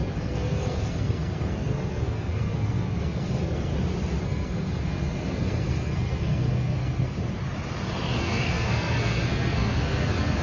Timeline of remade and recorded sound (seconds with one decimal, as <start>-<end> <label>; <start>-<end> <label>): 0.0-3.7 remade; 3.7-4.2 recorded; 4.2-7.2 remade; 7.2-8.2 recorded; 8.2-10.4 remade

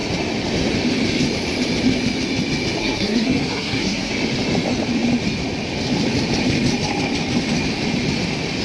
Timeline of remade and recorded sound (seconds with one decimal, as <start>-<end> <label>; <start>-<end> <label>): 0.0-2.8 recorded; 2.8-4.1 remade; 4.1-8.6 recorded

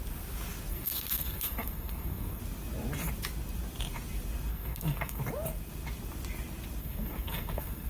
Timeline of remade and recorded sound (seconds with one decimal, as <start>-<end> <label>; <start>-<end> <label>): 0.0-0.7 recorded; 0.7-2.4 remade; 2.4-4.5 recorded; 4.5-5.2 remade; 5.2-6.8 recorded; 6.8-7.9 remade

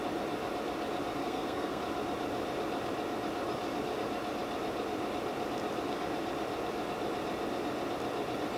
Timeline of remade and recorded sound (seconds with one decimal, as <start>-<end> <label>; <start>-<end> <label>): 0.0-1.2 recorded; 1.2-1.8 remade; 1.8-8.6 recorded

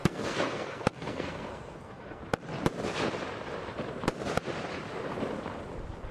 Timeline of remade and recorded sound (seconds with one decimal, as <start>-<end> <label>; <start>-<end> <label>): 0.0-2.2 remade; 2.2-6.1 recorded